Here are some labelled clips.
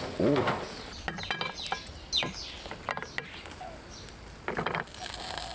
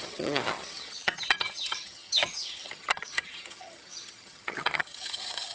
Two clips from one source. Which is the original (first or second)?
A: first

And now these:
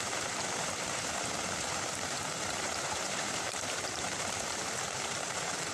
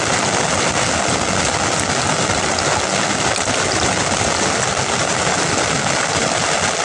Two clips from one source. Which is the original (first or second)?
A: second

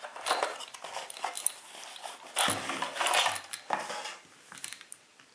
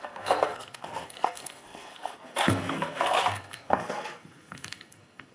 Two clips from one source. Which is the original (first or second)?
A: first